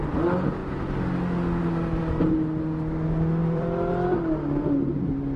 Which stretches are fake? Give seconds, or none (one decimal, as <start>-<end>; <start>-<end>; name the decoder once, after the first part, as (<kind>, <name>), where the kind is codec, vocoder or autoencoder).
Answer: 3.4-3.9 (vocoder, BigVGAN v2)